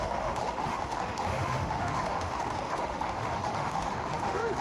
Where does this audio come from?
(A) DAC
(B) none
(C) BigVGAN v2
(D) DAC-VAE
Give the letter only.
D